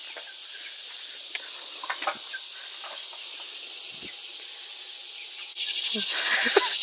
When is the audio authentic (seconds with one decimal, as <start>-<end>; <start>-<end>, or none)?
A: 0.0-6.8